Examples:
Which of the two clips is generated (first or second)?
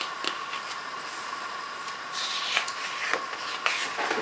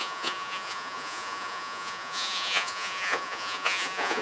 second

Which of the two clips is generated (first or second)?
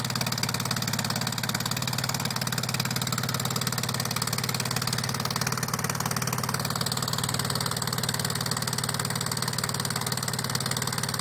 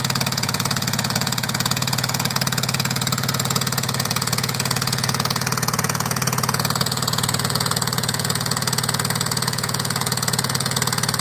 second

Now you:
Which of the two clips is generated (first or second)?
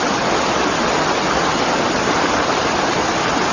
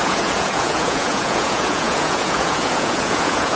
second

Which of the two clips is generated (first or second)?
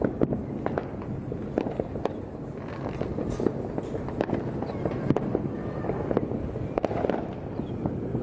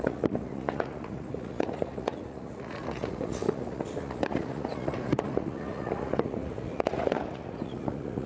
second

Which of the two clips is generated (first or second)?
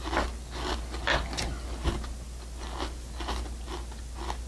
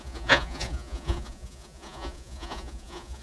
second